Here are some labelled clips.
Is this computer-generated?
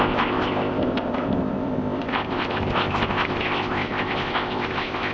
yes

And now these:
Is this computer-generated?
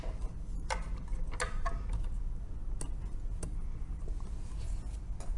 no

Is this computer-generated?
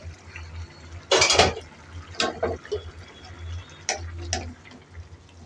no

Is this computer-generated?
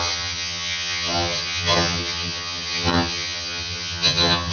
yes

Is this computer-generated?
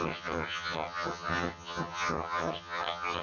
yes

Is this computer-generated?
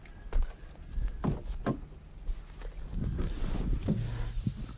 no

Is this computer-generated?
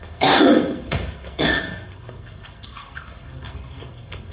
yes